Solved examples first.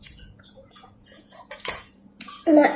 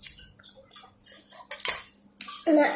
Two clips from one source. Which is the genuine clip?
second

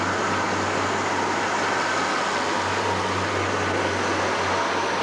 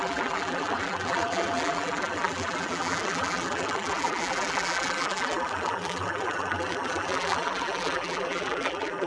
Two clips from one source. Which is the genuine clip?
first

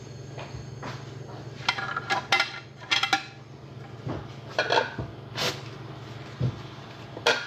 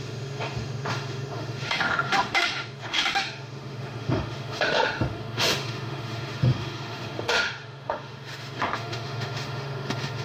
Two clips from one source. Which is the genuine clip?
first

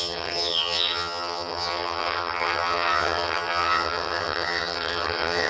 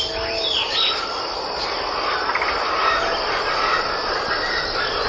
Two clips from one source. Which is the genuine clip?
second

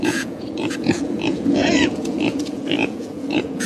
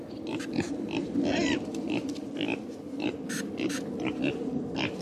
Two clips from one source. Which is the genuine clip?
second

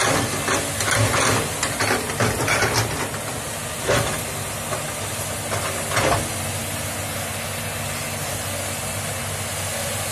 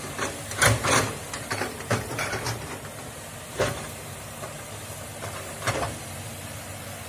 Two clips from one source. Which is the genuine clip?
first